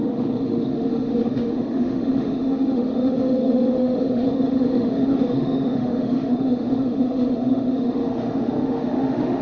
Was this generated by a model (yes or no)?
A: yes